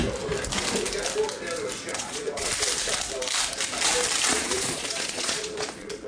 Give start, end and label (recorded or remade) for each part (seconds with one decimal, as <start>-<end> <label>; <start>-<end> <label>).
0.0-1.9 recorded; 1.9-2.5 remade; 2.5-4.3 recorded; 4.3-6.1 remade